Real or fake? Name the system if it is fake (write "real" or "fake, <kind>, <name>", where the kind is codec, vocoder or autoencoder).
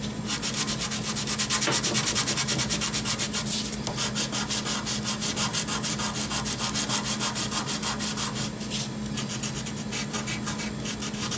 real